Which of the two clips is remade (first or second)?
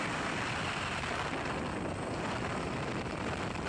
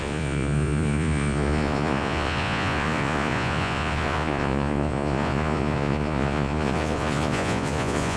second